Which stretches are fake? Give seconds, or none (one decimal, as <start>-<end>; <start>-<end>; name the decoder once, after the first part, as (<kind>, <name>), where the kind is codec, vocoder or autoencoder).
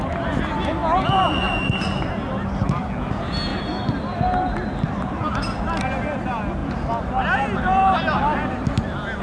none